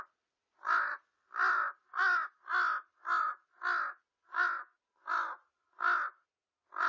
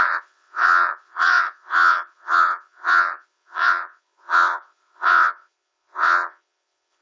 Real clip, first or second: first